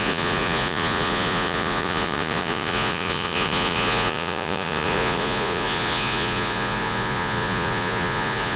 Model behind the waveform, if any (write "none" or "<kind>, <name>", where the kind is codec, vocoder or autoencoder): vocoder, Vocos